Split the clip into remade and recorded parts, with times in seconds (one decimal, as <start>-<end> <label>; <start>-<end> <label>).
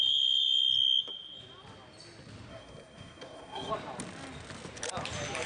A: 0.0-2.5 recorded; 2.5-3.7 remade; 3.7-5.5 recorded